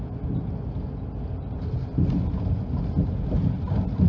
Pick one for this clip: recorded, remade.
recorded